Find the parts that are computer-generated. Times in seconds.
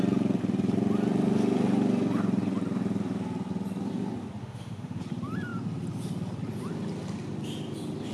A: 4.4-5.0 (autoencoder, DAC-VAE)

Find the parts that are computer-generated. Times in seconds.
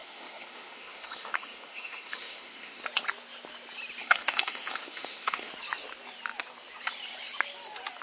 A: 0.0-2.8 (autoencoder, DAC-VAE); 4.0-5.5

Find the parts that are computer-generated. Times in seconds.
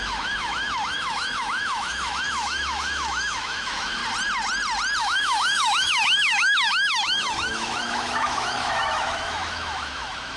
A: 0.0-4.0 (autoencoder, DAC-VAE); 5.0-10.4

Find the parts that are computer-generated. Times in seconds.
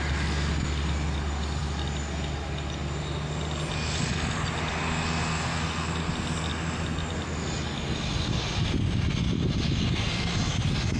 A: none